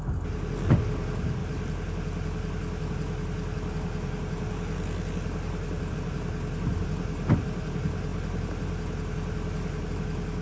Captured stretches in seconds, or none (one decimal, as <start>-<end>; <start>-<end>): 0.0-10.4